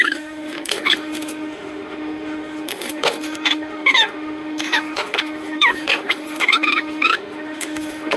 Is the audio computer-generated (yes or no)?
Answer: yes